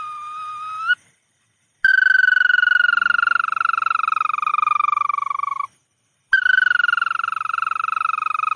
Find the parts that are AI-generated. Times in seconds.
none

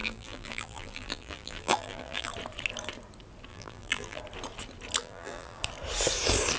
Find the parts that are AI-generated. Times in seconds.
0.0-2.3 (vocoder, BigVGAN v2); 3.5-4.2; 5.0-5.6

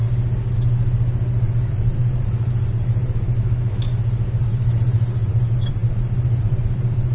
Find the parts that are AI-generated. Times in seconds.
1.7-3.3 (vocoder, BigVGAN v2); 4.4-7.1

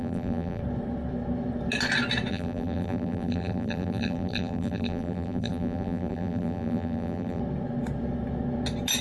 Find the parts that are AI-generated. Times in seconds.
0.0-0.6 (vocoder, BigVGAN v2); 2.3-7.4

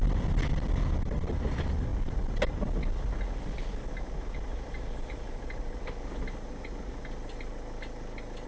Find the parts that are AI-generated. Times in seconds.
none

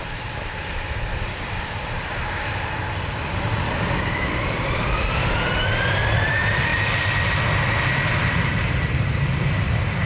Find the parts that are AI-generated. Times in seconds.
0.0-10.1 (vocoder, BigVGAN v2)

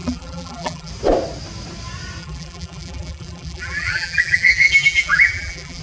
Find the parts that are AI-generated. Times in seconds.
0.0-0.9 (vocoder, BigVGAN v2); 2.2-5.8